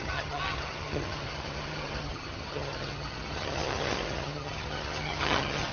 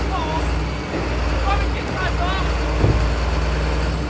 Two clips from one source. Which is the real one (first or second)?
second